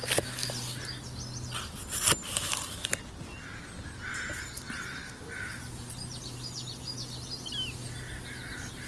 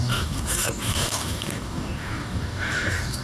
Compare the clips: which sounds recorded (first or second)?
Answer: first